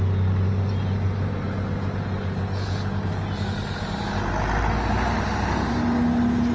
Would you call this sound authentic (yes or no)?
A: yes